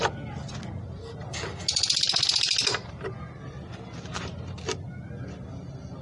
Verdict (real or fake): real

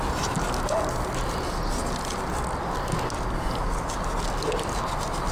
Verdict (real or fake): real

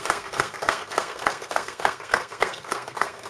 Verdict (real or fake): fake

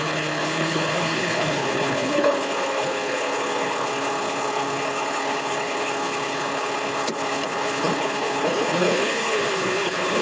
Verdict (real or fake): fake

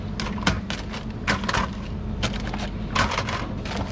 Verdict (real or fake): real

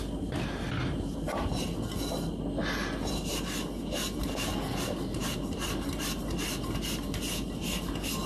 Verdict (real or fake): real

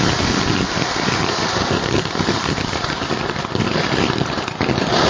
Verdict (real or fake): real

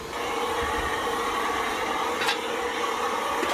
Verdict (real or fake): real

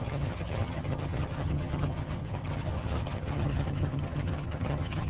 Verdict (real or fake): fake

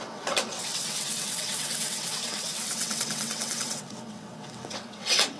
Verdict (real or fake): fake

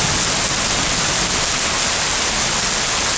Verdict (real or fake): real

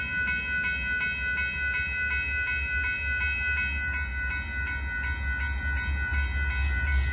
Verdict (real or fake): real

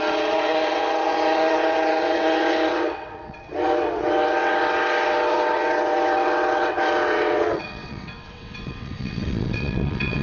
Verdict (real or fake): fake